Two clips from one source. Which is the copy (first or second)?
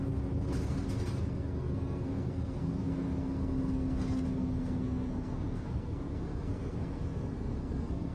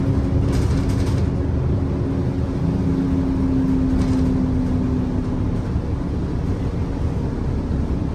first